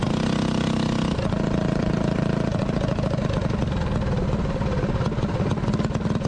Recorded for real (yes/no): yes